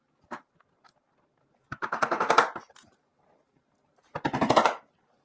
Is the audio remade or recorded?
remade